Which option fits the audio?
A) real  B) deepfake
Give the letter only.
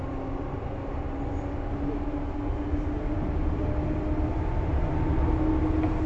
A